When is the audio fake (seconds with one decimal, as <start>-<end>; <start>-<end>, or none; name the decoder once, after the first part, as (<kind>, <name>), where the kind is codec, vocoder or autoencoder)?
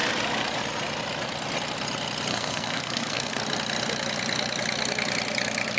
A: 2.3-3.4 (codec, SNAC)